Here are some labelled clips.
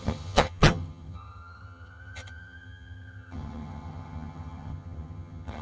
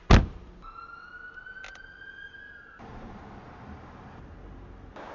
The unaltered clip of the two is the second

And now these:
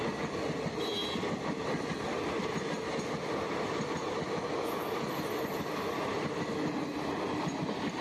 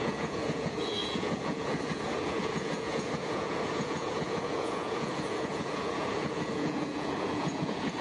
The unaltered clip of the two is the first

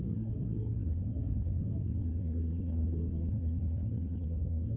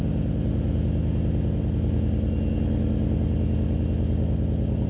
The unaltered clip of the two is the second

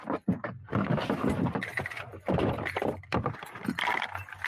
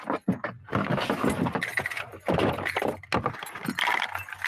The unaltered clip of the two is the second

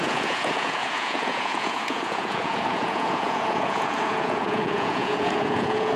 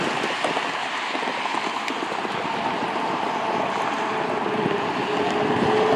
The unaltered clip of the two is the second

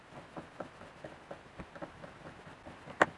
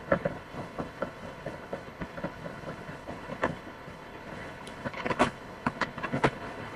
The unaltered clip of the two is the first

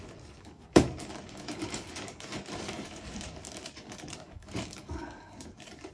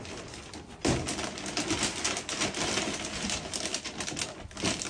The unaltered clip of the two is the second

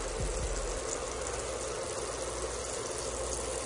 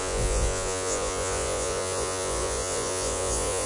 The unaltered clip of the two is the first